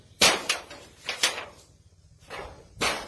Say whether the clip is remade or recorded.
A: remade